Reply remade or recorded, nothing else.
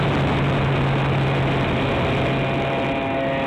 recorded